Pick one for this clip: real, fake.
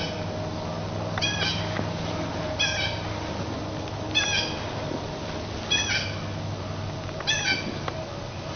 real